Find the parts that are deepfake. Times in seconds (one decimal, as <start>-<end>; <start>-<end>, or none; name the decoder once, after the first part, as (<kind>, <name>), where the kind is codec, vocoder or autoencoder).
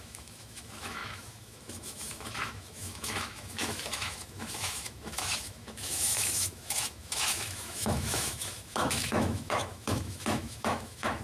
0.0-11.2 (autoencoder, DAC-VAE)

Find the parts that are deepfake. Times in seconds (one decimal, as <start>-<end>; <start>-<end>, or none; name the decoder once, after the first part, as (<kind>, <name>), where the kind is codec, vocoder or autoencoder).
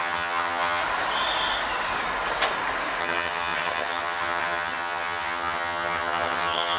0.0-0.8 (vocoder, HiFi-GAN); 3.0-6.8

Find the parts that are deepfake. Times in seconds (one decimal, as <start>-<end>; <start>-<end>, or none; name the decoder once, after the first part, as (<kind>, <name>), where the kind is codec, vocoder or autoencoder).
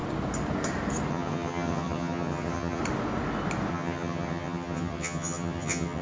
1.1-2.8 (vocoder, HiFi-GAN); 3.7-6.0